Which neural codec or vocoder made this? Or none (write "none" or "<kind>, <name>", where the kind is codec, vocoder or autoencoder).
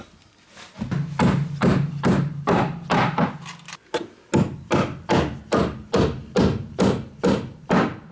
none